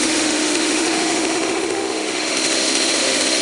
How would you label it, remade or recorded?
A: remade